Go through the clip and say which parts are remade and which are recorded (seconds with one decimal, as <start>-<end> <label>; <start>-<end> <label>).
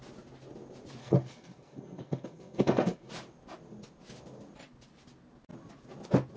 0.0-1.0 recorded; 1.0-3.1 remade; 3.1-6.4 recorded